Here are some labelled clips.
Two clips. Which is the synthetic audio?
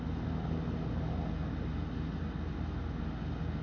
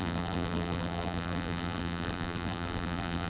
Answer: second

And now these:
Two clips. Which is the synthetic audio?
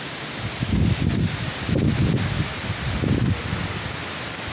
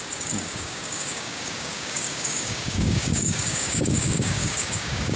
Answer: second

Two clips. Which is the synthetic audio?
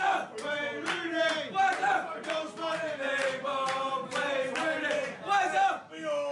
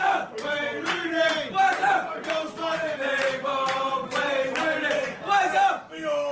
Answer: second